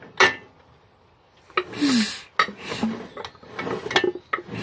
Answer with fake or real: real